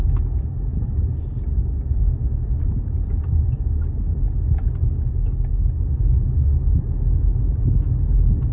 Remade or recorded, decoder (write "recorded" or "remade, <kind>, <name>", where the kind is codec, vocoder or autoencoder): recorded